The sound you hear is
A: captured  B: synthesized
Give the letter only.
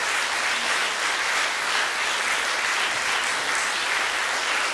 A